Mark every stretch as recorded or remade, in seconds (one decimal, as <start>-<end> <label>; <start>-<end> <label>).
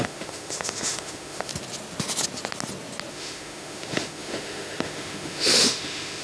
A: 0.0-1.5 remade; 1.5-3.1 recorded; 3.1-6.2 remade